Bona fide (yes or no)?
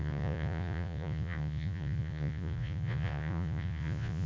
no